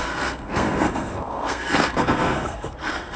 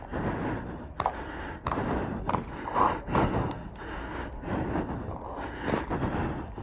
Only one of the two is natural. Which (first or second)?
second